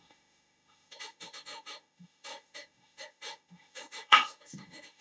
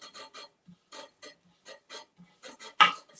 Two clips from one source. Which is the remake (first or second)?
first